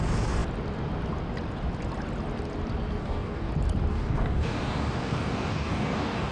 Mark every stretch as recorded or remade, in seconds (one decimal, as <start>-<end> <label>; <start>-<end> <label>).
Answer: 0.0-3.0 recorded; 3.0-3.5 remade; 3.5-3.9 recorded; 3.9-6.3 remade